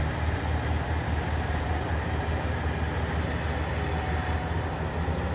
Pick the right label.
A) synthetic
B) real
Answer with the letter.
B